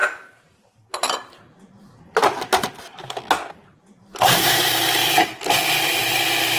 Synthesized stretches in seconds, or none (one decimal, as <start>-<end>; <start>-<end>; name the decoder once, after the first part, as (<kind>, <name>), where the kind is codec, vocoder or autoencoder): 0.0-2.8 (vocoder, BigVGAN v2); 3.6-4.6